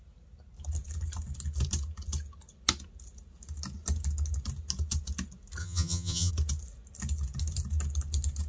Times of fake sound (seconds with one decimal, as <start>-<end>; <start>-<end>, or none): 5.6-6.3